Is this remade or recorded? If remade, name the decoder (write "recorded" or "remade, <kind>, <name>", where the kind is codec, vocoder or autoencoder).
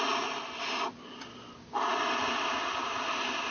recorded